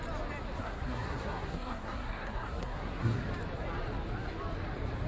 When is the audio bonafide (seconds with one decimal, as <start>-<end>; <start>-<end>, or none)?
0.0-0.6; 3.2-5.1